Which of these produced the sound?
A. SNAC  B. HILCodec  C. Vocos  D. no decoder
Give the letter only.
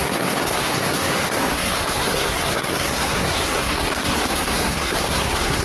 A